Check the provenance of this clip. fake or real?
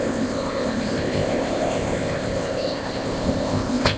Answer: fake